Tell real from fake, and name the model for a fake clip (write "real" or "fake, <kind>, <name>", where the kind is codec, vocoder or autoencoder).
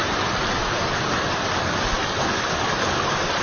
real